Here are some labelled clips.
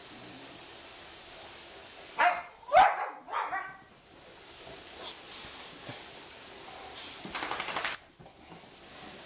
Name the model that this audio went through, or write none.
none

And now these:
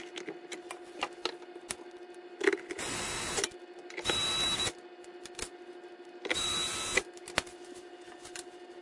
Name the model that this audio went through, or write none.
none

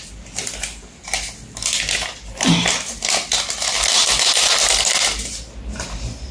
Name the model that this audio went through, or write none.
none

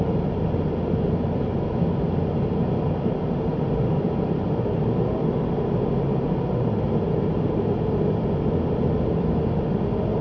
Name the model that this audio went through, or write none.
none